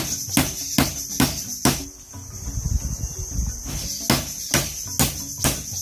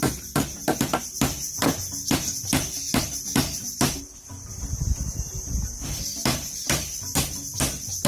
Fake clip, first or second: second